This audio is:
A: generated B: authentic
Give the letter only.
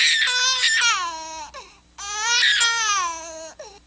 B